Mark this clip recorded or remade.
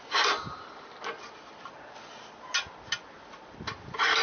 recorded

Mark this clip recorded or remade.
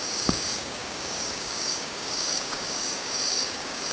remade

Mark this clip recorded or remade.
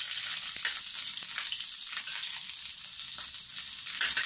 recorded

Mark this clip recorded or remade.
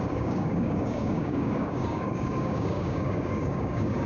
remade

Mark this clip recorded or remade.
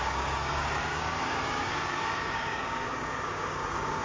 remade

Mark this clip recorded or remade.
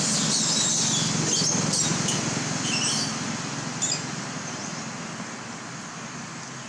recorded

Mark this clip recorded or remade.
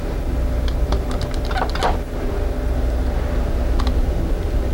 recorded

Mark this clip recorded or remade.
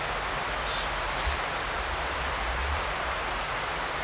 recorded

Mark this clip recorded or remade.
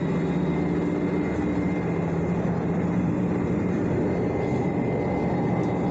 recorded